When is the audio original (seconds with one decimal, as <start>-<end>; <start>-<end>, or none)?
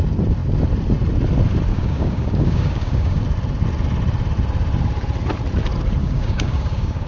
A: 0.0-1.7; 3.2-6.0